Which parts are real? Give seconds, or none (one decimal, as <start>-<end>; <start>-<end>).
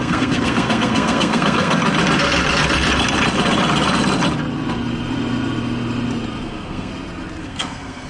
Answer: 1.8-6.4; 6.9-7.4